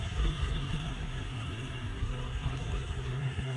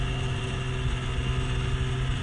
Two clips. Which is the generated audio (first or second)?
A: first